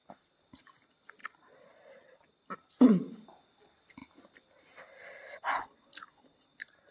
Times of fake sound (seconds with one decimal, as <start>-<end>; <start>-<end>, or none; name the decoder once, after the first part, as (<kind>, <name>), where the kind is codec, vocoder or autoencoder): none